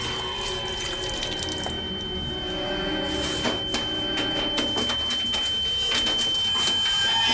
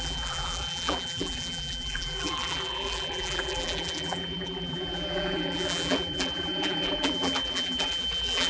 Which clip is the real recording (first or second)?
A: first